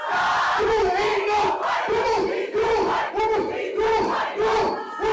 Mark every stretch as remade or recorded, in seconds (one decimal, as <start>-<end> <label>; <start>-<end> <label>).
0.0-1.1 recorded; 1.1-3.1 remade; 3.1-5.1 recorded